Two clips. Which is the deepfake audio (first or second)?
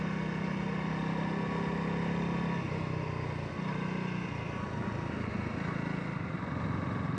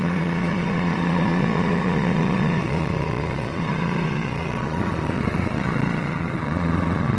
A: second